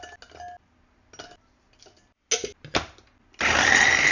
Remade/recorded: recorded